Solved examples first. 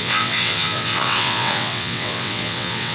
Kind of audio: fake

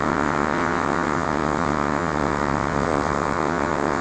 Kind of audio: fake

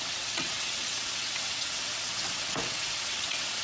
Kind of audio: fake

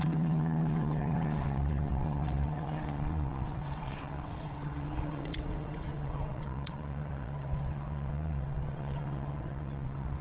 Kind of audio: fake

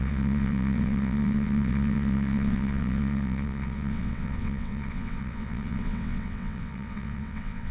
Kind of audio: fake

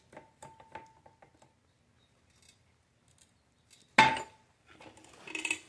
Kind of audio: real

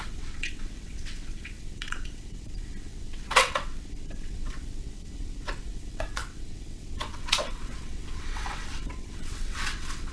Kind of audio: fake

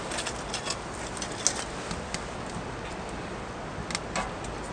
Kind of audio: real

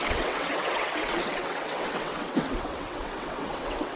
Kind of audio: fake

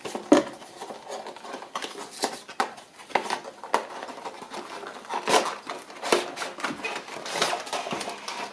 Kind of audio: real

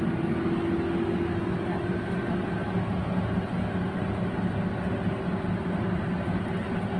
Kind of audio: real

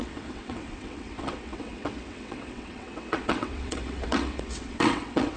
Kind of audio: fake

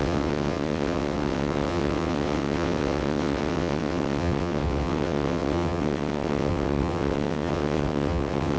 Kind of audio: fake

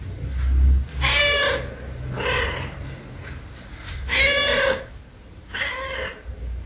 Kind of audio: real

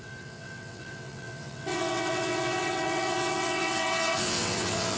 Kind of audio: fake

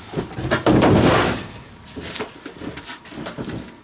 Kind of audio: real